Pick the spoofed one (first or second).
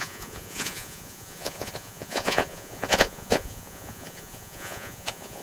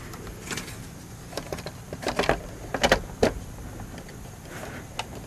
first